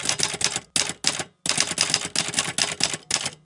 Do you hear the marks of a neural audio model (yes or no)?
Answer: no